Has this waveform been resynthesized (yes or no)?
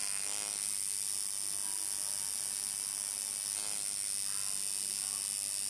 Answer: no